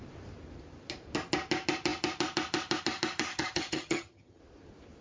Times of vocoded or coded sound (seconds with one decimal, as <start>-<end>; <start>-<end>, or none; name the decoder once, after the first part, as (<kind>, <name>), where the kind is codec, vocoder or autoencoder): 3.3-4.4 (vocoder, HiFi-GAN)